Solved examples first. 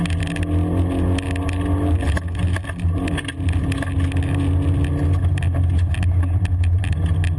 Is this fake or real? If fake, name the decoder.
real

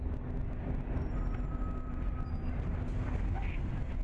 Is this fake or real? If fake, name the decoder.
real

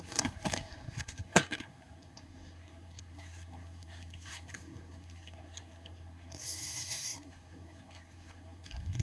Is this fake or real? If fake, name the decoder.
fake, codec, SNAC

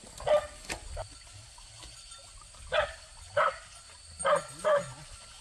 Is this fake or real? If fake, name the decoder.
real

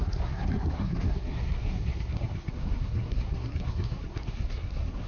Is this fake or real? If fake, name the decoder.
fake, codec, SNAC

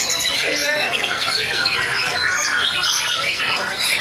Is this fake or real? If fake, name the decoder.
fake, codec, SNAC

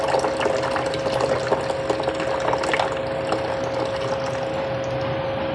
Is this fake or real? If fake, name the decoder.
real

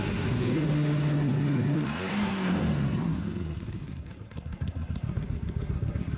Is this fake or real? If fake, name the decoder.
fake, codec, SNAC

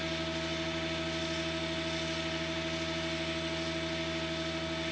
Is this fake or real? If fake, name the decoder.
real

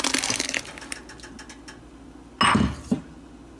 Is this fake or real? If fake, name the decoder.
real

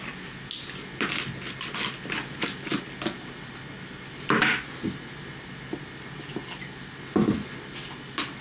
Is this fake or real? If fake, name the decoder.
real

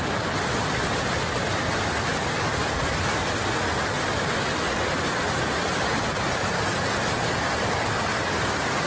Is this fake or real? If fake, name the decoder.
real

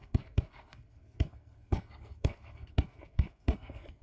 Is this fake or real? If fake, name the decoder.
fake, codec, SNAC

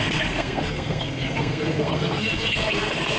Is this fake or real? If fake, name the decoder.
fake, codec, SNAC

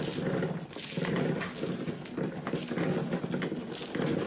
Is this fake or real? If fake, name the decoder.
real